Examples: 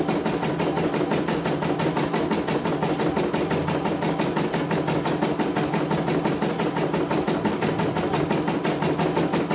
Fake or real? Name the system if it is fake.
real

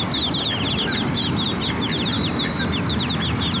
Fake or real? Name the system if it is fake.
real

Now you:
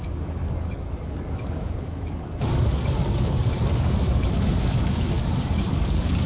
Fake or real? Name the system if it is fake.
fake, codec, DAC